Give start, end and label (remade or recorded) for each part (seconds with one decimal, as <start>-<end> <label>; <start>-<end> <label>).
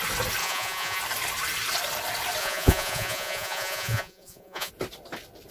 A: 0.0-0.4 recorded; 0.4-1.0 remade; 1.0-2.4 recorded; 2.4-4.7 remade; 4.7-5.5 recorded